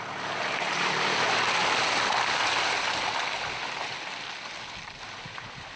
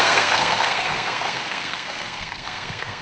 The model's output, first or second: second